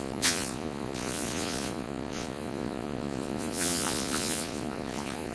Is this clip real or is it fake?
fake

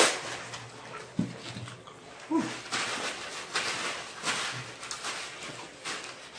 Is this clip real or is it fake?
real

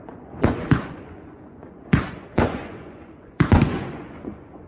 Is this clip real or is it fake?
fake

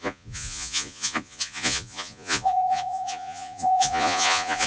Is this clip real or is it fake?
fake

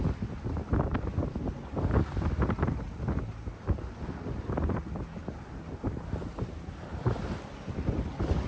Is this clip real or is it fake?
real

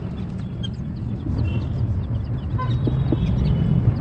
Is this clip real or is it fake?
real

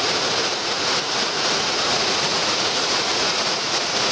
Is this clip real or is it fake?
fake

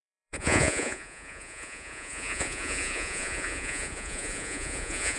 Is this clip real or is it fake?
fake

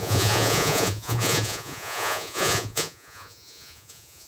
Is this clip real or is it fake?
fake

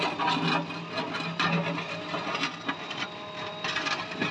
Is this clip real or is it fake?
real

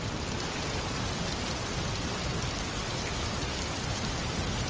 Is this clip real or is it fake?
real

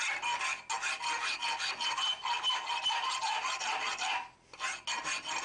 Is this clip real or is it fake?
real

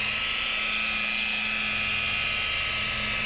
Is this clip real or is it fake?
real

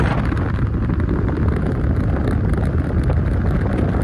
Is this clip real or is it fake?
real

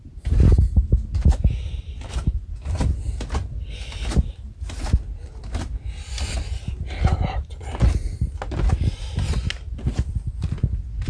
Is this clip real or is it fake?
real